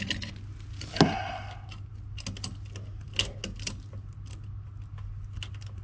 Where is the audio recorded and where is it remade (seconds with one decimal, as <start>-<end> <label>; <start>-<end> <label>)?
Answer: 0.0-5.8 recorded